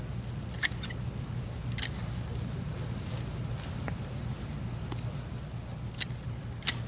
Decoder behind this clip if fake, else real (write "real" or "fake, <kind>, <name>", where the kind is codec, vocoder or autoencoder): real